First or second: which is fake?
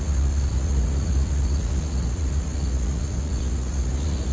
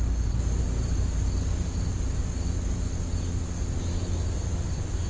first